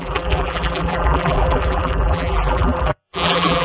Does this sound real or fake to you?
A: fake